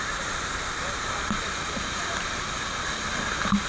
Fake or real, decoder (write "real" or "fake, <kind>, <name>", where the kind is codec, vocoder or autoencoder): real